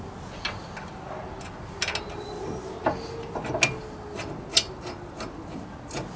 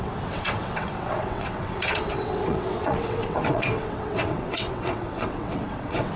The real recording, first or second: first